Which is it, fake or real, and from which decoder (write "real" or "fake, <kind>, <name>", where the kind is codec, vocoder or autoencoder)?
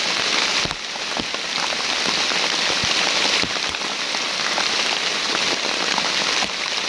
real